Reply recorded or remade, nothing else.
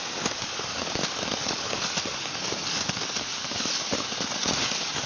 remade